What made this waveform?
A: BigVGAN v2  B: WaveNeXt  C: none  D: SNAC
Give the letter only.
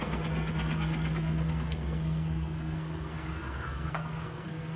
D